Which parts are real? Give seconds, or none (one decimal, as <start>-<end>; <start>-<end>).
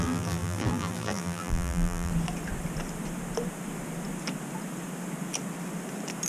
2.1-6.3